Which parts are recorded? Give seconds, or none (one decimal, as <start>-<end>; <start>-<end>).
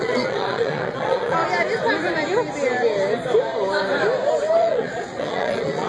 1.4-4.6